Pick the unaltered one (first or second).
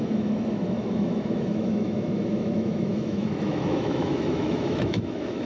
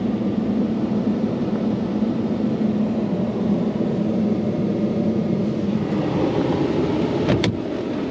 second